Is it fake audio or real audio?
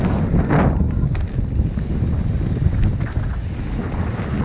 real